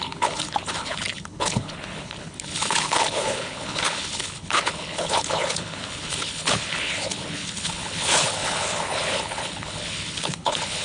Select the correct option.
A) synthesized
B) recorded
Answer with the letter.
A